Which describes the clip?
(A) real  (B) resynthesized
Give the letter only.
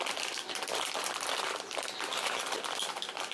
B